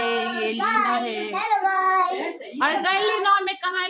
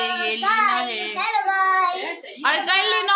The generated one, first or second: first